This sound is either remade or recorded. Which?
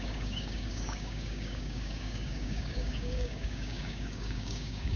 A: remade